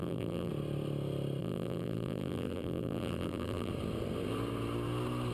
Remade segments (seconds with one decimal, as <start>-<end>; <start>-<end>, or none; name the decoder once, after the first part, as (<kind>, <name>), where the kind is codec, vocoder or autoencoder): 0.0-0.5 (vocoder, BigVGAN v2); 1.4-3.7